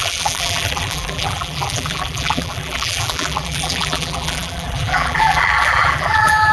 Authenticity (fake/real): fake